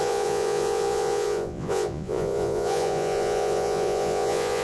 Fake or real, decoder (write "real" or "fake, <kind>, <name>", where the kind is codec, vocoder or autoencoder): fake, vocoder, Vocos